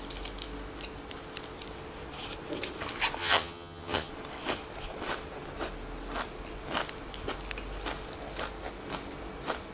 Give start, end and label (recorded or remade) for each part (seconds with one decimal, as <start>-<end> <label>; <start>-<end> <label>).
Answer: 0.0-3.2 recorded; 3.2-4.1 remade; 4.1-9.7 recorded